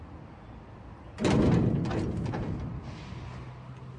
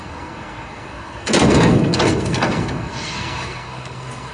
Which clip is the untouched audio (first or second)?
first